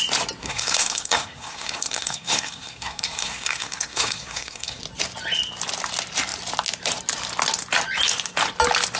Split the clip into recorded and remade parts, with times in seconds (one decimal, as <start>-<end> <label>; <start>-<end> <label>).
0.0-0.4 recorded; 0.4-4.8 remade; 4.8-9.0 recorded